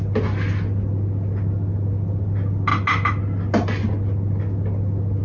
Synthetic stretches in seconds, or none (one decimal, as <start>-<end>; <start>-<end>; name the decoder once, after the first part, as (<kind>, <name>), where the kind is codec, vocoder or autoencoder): none